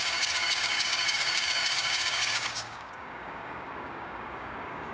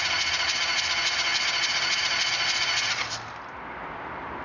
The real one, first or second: second